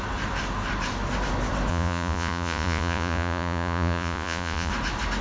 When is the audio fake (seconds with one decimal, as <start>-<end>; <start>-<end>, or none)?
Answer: 1.7-4.7